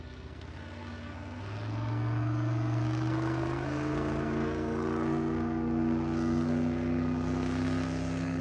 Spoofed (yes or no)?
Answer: yes